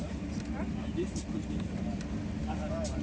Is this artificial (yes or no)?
no